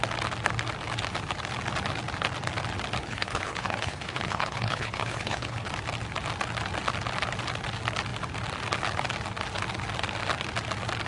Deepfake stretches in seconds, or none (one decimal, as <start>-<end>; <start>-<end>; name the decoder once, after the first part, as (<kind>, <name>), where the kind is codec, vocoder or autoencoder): 3.0-5.7 (codec, HILCodec)